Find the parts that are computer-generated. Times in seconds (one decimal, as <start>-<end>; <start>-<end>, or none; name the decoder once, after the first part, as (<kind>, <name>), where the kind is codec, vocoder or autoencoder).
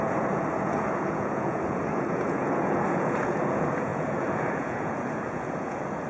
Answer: 0.0-6.1 (vocoder, Vocos)